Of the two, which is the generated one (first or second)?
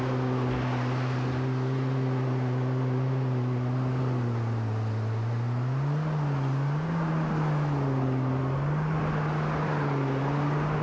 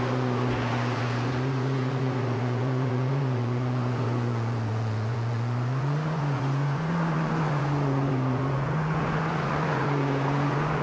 second